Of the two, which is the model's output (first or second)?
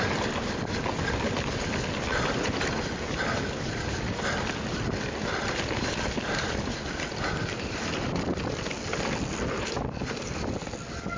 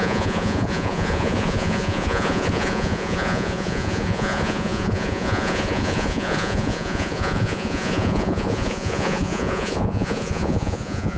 second